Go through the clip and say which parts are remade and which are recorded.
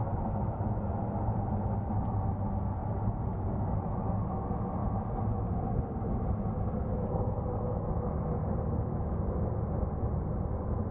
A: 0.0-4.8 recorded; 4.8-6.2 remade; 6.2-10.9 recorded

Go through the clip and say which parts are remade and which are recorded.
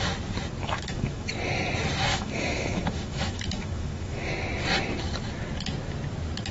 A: 0.0-0.6 recorded; 0.6-1.3 remade; 1.3-2.1 recorded; 2.1-4.3 remade; 4.3-6.5 recorded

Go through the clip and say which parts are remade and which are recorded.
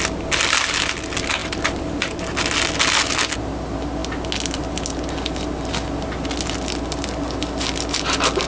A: 0.0-8.5 recorded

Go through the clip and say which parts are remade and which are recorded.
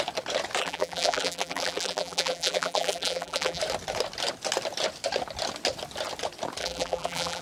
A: 0.0-0.6 recorded; 0.6-3.6 remade; 3.6-6.6 recorded; 6.6-7.4 remade